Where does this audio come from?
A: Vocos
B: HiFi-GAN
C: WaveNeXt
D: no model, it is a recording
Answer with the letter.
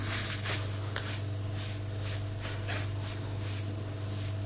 D